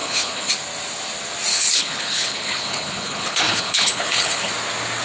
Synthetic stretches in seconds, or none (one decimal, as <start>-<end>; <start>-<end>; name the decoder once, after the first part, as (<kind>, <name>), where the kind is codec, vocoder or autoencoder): 0.0-0.5 (codec, HILCodec); 1.5-4.5